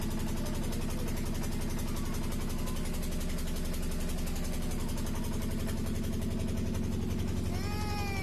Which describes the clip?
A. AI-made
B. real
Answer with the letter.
B